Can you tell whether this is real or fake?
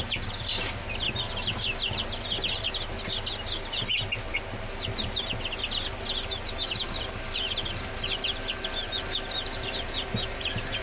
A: real